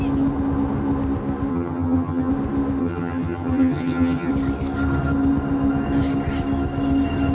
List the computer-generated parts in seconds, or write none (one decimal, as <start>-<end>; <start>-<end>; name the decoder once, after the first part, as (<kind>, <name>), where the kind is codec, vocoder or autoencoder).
1.5-2.3 (vocoder, HiFi-GAN); 2.8-4.3